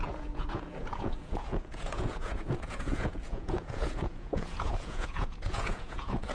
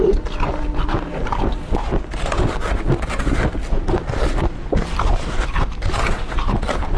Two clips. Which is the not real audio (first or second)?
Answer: first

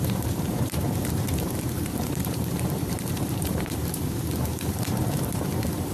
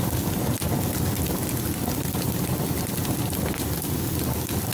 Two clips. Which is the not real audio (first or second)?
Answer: first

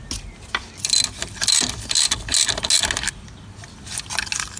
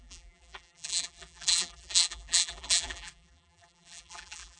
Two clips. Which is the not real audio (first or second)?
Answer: second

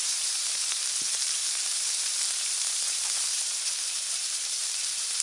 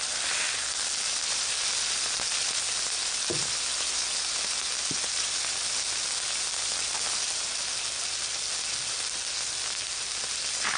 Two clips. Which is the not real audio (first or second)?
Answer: first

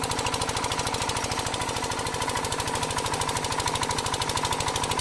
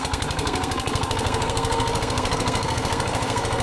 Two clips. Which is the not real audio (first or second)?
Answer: second